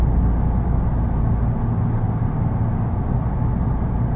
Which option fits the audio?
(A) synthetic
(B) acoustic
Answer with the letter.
B